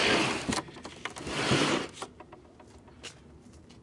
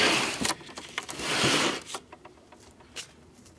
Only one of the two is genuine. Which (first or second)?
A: first